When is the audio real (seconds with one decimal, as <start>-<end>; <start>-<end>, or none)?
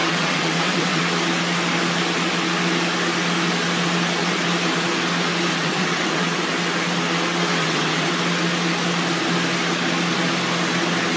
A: 1.0-5.5; 6.4-7.5; 8.1-11.2